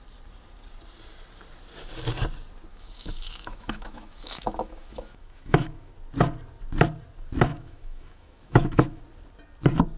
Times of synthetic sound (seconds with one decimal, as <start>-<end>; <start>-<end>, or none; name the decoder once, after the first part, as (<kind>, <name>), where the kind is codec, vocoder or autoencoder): 2.7-5.9 (autoencoder, DAC-VAE); 7.5-9.0